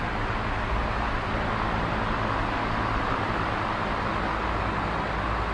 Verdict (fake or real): real